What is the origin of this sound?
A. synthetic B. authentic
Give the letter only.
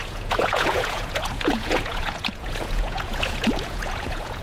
A